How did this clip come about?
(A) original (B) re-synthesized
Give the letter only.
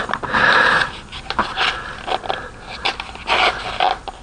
A